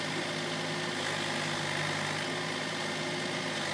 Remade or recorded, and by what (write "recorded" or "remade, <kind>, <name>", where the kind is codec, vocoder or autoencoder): recorded